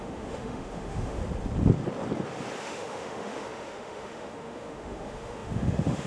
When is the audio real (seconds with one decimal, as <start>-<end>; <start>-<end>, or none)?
1.2-2.6